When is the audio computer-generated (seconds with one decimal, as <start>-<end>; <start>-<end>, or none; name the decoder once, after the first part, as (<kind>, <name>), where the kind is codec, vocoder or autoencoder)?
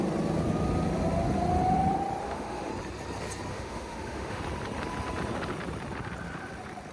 2.2-2.7 (autoencoder, DAC-VAE); 3.5-4.4